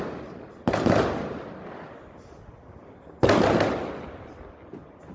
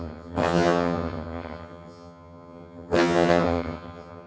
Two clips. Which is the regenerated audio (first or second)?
second